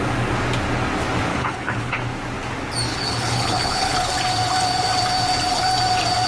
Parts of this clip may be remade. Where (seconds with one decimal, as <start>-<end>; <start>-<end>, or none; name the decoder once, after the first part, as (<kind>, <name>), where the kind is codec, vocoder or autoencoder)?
1.3-2.0 (codec, HILCodec); 2.9-4.1